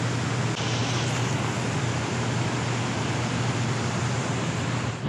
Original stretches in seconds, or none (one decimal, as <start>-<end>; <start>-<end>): 0.0-5.1